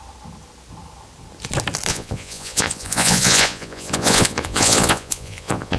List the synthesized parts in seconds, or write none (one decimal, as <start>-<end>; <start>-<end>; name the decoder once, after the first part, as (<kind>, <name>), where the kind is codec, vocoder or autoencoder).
1.9-5.8 (vocoder, Vocos)